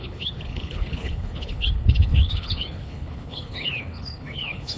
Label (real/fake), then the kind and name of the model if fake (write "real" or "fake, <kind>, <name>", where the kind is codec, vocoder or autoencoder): fake, codec, HILCodec